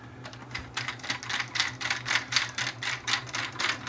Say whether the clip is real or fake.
real